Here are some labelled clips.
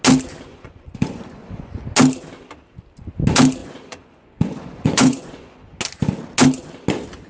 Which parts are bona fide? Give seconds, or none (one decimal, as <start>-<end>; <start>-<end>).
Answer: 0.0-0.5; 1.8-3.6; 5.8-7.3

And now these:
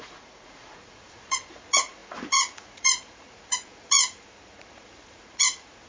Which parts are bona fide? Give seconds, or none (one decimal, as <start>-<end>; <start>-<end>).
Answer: none

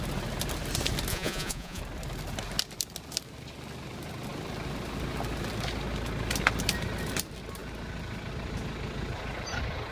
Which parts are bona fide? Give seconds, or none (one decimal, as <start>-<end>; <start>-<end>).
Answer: 0.0-1.1; 1.8-9.9

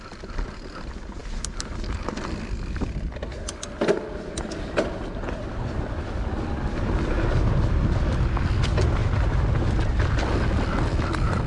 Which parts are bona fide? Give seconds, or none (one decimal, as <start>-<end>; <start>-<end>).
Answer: 0.0-11.5